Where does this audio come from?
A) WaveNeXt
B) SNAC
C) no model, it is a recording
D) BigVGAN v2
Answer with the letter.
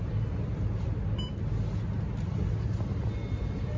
C